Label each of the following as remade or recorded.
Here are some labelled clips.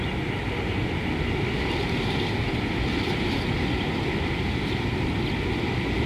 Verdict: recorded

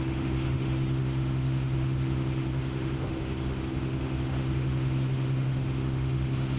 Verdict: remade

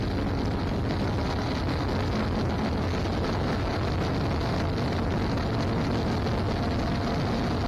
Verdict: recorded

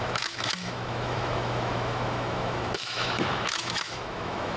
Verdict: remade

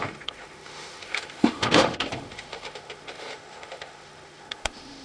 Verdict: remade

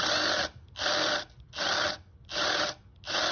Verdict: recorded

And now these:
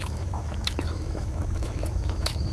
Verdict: remade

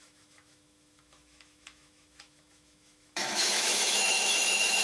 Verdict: remade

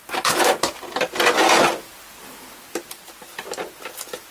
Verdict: recorded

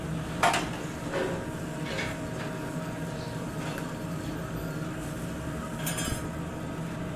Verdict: recorded